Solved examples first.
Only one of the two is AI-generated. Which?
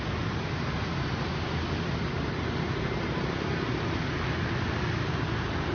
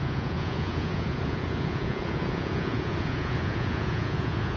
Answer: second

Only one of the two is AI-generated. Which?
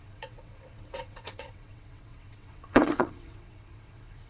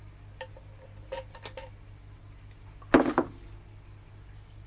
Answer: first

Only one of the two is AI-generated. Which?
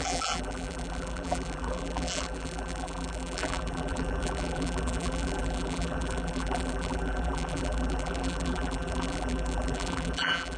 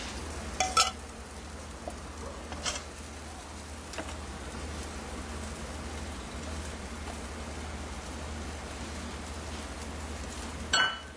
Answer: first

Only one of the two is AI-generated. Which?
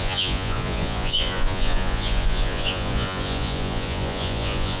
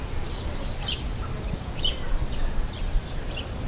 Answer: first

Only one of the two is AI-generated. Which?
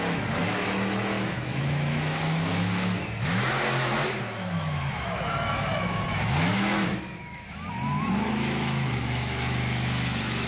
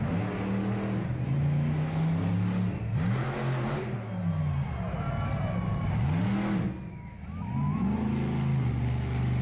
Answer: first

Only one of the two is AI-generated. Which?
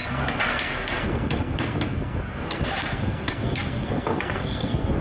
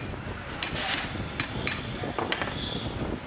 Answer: first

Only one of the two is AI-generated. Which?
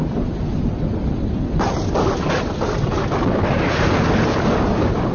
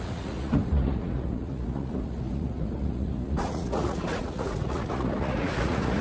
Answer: second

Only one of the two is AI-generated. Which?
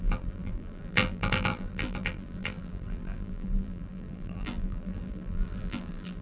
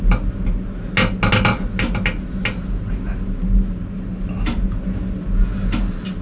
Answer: first